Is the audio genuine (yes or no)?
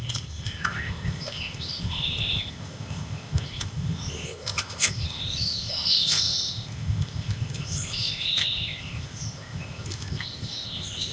no